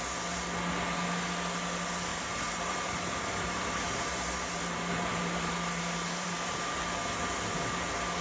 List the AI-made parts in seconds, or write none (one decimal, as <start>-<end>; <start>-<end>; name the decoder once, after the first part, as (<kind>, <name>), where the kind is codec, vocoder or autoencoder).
2.1-7.0 (vocoder, BigVGAN v2)